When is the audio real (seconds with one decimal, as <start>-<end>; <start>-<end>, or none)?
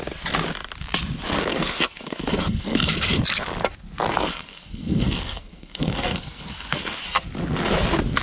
0.0-1.5; 3.2-4.1; 7.2-8.2